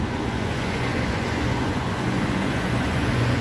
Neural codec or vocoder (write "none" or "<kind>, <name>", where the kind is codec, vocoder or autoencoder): vocoder, Vocos